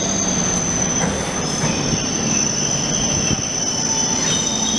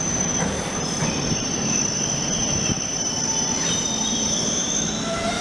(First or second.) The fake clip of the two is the second